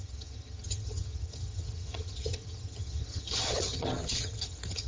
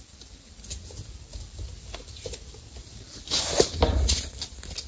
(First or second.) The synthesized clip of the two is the first